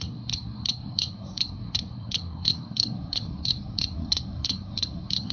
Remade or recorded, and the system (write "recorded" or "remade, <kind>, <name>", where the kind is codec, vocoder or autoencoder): remade, codec, SNAC